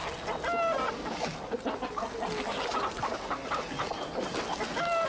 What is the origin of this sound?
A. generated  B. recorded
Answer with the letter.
B